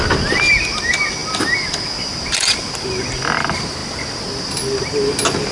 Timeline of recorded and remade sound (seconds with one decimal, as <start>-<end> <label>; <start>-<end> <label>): 0.0-5.5 recorded

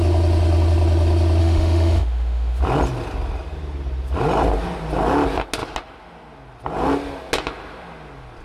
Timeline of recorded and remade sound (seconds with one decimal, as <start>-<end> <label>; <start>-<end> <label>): 0.0-1.4 recorded; 1.4-2.6 remade; 2.6-8.4 recorded